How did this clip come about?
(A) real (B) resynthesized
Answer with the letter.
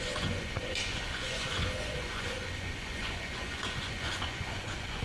B